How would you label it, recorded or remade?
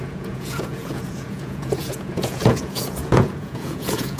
remade